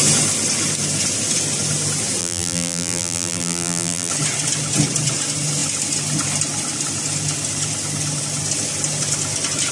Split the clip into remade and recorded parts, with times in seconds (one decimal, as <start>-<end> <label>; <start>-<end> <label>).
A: 0.0-2.2 recorded; 2.2-4.1 remade; 4.1-9.7 recorded